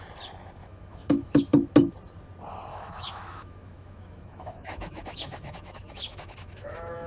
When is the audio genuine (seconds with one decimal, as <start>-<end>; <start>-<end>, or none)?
0.0-0.6; 1.4-2.7